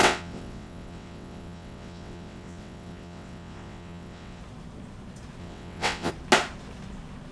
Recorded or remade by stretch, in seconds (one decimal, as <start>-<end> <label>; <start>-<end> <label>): 0.0-4.4 remade; 4.4-5.4 recorded; 5.4-6.1 remade; 6.1-7.3 recorded